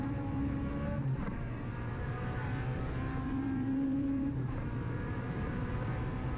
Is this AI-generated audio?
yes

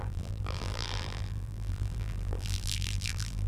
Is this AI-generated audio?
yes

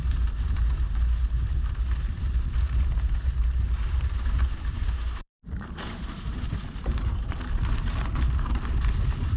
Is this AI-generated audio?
yes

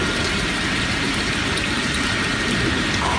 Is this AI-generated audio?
yes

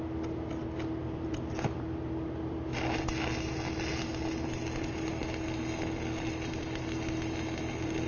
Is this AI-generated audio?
no